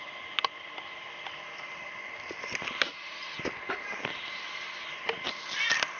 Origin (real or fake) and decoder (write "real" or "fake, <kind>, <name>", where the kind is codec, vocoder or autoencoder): real